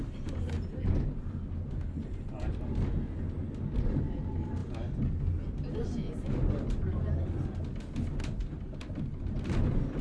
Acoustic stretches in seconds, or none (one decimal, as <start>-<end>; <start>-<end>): 0.0-10.0